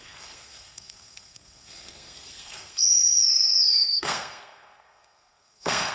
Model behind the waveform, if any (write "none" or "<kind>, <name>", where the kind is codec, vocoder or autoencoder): codec, SNAC